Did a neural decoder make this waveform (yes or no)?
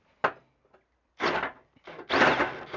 no